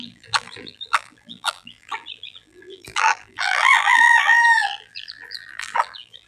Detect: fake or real fake